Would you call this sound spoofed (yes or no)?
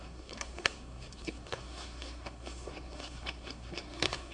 yes